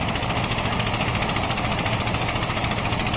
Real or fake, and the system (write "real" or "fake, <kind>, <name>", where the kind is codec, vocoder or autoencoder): real